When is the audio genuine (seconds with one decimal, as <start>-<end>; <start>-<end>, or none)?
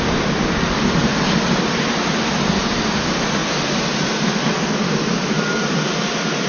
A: 0.0-6.5